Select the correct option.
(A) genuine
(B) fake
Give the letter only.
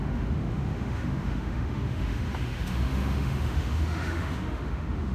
B